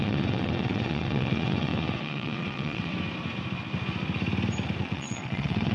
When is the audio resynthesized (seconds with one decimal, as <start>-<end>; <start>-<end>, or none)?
0.0-2.9; 4.8-5.7